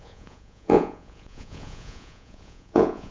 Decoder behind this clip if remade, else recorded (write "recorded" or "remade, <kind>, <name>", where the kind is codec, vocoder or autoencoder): remade, vocoder, Vocos